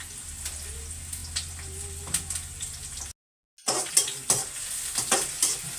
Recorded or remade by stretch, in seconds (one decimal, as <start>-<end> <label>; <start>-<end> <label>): 0.0-5.8 recorded